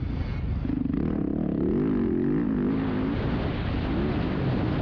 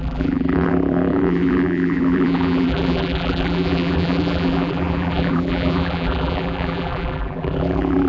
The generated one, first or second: second